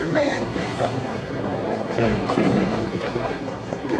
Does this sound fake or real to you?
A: fake